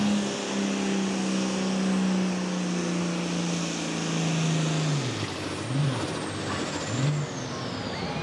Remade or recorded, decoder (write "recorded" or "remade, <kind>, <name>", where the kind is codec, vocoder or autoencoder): recorded